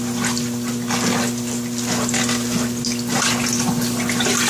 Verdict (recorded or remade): recorded